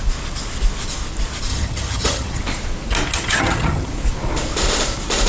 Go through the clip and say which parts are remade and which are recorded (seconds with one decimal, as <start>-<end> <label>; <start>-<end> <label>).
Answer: 0.0-1.5 recorded; 1.5-2.4 remade; 2.4-3.1 recorded; 3.1-3.9 remade; 3.9-5.3 recorded